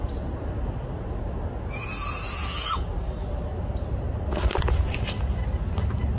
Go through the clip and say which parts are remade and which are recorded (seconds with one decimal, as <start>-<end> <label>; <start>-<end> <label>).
0.0-6.2 recorded

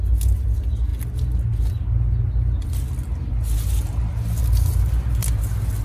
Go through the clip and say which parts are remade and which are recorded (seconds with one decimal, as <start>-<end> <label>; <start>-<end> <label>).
0.0-5.8 recorded